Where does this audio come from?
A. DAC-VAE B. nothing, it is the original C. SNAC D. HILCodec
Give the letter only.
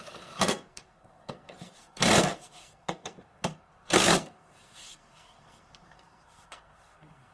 C